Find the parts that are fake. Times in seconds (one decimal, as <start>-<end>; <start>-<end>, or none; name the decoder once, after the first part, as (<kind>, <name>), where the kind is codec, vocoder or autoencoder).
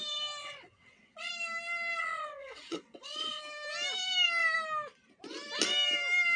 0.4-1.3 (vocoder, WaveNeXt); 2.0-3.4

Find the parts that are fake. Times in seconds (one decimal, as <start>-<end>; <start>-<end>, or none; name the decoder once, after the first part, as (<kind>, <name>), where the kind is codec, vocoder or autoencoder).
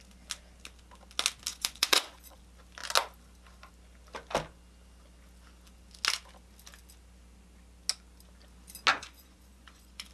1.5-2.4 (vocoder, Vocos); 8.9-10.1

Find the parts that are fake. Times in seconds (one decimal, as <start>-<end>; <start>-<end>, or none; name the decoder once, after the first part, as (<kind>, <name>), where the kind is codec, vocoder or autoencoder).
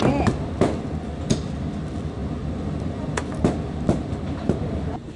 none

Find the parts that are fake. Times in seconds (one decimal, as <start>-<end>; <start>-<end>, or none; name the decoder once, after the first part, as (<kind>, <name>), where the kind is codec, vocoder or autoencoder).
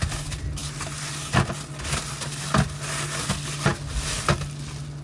none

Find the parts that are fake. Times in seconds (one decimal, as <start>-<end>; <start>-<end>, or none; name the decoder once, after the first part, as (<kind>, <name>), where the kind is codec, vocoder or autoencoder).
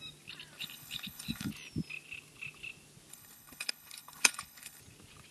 0.6-1.5 (codec, HILCodec); 3.1-4.8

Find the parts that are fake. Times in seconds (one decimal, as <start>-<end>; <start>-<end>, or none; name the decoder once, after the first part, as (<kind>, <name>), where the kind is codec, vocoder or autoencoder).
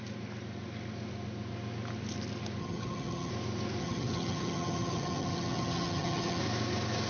2.6-3.3 (vocoder, HiFi-GAN); 3.8-6.4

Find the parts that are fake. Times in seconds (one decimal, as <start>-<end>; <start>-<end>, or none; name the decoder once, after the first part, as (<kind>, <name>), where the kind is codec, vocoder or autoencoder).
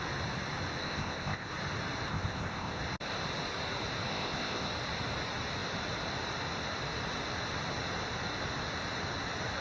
0.8-1.5 (codec, ZipCodec); 2.1-2.8; 4.1-4.7